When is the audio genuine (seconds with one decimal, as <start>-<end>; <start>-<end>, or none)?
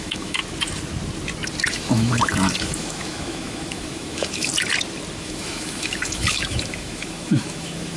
0.4-1.7; 4.5-5.2